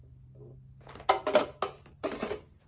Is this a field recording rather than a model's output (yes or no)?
yes